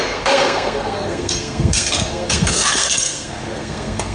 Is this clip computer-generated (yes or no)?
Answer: yes